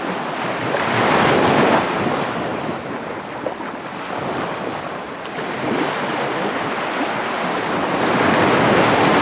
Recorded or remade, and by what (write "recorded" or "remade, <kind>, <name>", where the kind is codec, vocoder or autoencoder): recorded